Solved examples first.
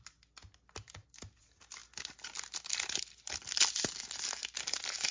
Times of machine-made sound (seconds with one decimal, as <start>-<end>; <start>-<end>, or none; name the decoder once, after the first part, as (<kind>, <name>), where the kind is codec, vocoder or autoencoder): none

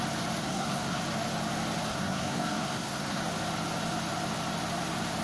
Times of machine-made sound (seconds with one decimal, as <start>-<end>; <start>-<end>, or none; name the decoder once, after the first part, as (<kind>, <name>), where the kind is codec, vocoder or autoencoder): 0.4-1.0 (codec, SNAC); 1.9-3.2

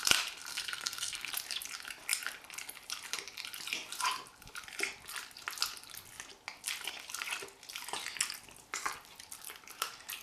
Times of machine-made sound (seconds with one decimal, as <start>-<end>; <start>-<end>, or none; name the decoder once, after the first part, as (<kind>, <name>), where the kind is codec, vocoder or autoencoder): 0.5-1.3 (codec, SNAC)

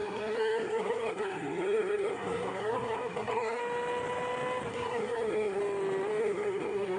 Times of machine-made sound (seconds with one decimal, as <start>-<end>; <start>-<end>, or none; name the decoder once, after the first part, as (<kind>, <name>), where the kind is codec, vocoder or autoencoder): 0.0-3.6 (codec, SNAC); 4.7-5.6; 6.2-7.0

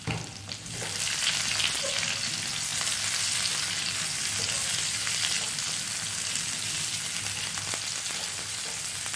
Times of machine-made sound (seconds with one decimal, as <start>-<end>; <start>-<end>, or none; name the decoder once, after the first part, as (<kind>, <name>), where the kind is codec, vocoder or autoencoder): none

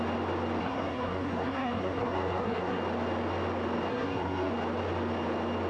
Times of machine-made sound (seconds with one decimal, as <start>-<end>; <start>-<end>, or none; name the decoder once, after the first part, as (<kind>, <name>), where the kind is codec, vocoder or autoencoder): 0.6-2.8 (codec, SNAC); 3.9-4.5